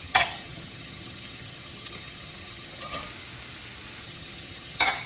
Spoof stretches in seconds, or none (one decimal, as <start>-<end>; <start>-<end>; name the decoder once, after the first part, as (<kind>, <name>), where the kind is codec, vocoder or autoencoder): 0.0-3.0 (vocoder, HiFi-GAN); 4.0-5.1